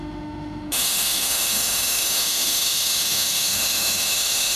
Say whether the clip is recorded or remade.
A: remade